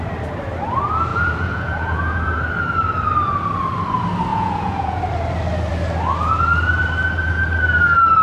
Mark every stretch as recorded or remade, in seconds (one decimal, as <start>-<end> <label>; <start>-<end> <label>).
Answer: 0.0-1.1 recorded; 1.1-2.4 remade; 2.4-4.3 recorded; 4.3-5.0 remade; 5.0-8.2 recorded